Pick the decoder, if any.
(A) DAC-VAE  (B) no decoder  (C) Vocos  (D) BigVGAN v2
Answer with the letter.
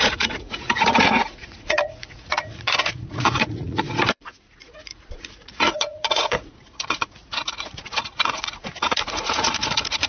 C